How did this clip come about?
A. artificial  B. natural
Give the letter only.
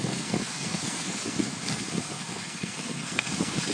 A